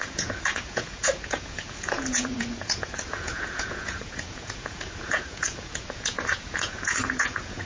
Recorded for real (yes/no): no